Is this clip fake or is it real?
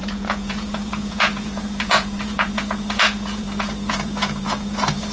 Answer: fake